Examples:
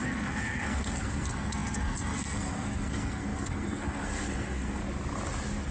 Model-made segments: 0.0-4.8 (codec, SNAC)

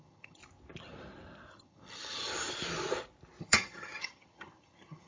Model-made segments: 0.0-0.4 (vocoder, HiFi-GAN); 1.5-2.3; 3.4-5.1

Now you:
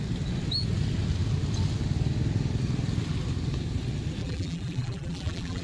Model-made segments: 4.2-5.6 (vocoder, BigVGAN v2)

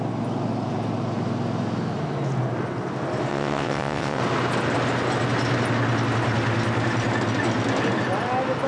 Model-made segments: 3.3-4.2 (vocoder, WaveNeXt)

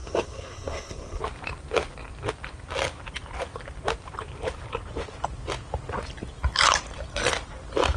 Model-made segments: 0.0-1.2 (codec, SNAC)

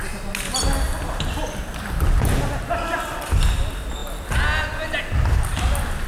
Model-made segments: none